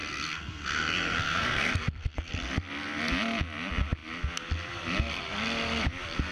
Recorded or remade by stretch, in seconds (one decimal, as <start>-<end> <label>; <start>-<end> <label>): 0.0-2.3 remade; 2.3-6.3 recorded